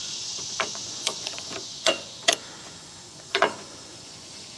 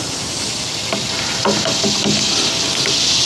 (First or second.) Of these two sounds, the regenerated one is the first